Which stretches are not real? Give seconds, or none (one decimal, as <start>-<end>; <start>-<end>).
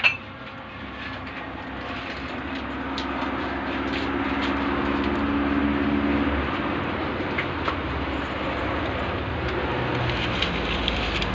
none